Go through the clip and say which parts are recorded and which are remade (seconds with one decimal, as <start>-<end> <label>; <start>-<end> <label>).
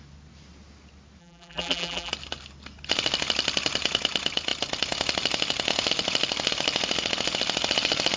0.0-1.2 recorded; 1.2-2.1 remade; 2.1-8.2 recorded